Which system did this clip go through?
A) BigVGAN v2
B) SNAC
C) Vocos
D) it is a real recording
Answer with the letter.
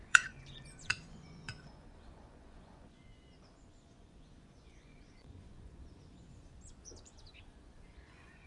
C